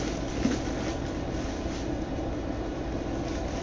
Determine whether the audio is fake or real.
real